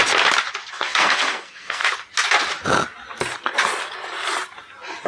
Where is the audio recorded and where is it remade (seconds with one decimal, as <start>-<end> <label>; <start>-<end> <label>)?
0.0-0.7 recorded; 0.7-1.8 remade; 1.8-5.1 recorded